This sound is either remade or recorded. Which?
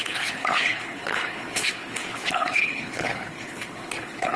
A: remade